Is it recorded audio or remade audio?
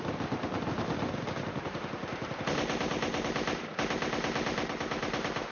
recorded